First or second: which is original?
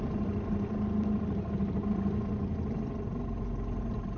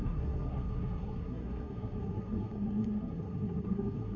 first